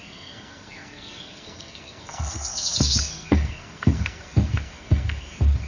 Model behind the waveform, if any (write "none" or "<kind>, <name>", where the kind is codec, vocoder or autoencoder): codec, SNAC